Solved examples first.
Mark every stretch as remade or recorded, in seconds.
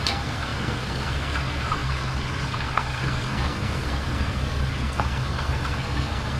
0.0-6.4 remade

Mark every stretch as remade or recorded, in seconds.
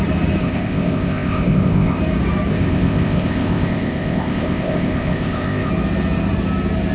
0.0-0.4 recorded; 0.4-2.0 remade; 2.0-2.5 recorded; 2.5-5.7 remade; 5.7-6.9 recorded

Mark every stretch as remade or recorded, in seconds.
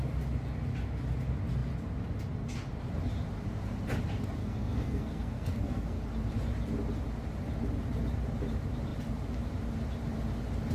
0.0-4.4 recorded; 4.4-6.0 remade; 6.0-10.7 recorded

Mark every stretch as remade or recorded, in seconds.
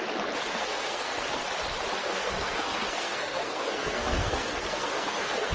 0.0-0.5 recorded; 0.5-1.4 remade; 1.4-2.0 recorded; 2.0-5.5 remade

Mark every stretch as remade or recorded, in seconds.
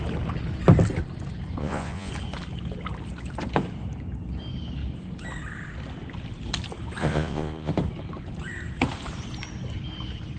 0.0-1.6 recorded; 1.6-2.1 remade; 2.1-7.0 recorded; 7.0-7.7 remade; 7.7-10.4 recorded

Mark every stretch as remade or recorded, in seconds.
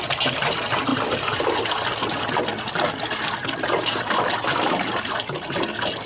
0.0-6.1 recorded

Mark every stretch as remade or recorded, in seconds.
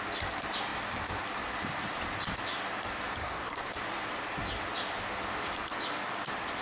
0.0-3.2 recorded; 3.2-3.7 remade; 3.7-6.6 recorded